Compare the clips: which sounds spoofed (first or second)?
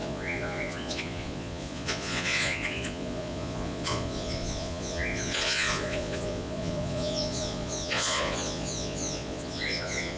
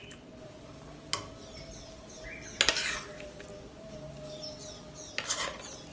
first